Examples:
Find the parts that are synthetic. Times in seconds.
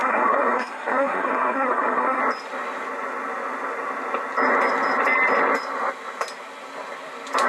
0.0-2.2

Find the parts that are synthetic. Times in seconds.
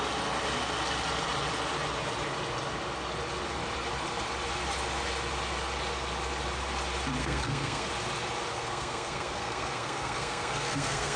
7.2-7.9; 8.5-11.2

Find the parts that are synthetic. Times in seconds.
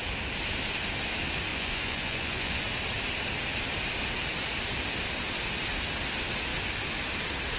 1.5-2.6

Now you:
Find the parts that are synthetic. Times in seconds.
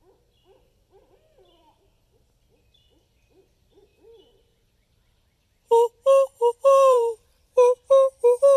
3.9-7.8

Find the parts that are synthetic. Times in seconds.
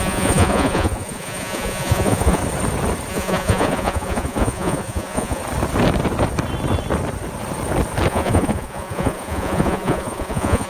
0.0-2.4; 3.1-5.4; 8.1-10.7